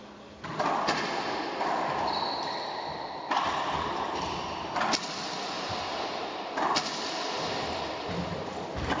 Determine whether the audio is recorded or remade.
recorded